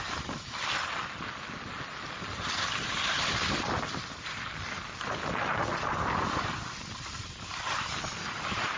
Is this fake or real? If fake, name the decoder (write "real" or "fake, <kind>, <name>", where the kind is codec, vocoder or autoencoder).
real